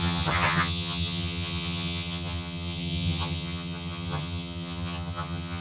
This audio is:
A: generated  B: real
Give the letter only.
A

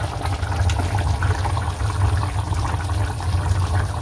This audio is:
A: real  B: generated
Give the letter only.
A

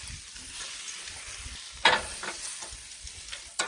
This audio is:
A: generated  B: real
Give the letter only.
B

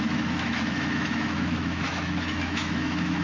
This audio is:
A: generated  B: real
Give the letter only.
A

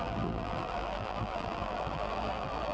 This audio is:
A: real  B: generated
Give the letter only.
B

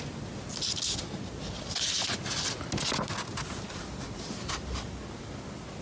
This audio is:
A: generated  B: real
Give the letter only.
B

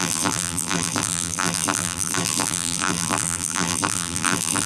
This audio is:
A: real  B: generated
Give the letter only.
B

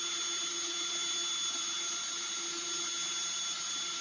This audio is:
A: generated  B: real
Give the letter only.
B